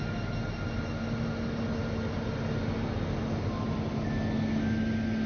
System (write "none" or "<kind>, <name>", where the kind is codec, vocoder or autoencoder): none